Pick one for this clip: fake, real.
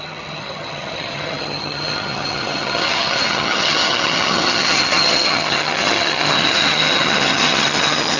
fake